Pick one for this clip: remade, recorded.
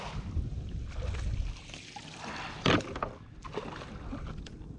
recorded